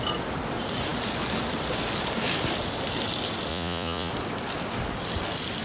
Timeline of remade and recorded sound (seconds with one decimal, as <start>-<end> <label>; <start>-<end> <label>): 0.0-3.5 recorded; 3.5-4.1 remade; 4.1-5.6 recorded